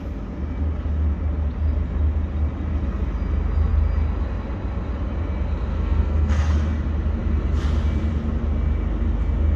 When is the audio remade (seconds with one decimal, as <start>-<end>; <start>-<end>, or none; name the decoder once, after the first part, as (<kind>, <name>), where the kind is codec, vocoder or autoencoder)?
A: 5.7-6.5 (codec, SNAC)